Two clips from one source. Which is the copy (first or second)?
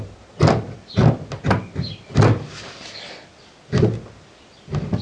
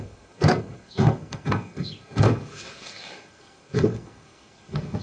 second